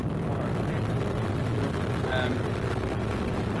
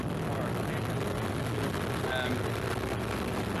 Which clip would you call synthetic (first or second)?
first